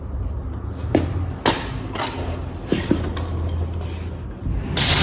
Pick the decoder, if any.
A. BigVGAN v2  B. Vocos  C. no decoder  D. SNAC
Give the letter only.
C